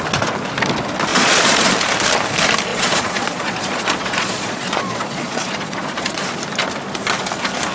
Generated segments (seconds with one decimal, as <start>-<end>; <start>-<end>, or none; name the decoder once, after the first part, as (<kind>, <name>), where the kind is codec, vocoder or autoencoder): 1.1-1.7 (vocoder, Vocos); 2.7-6.3